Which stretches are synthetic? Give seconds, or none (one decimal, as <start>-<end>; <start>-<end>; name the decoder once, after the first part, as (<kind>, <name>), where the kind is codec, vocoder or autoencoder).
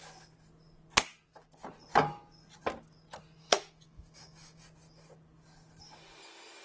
3.4-4.6 (autoencoder, DAC-VAE)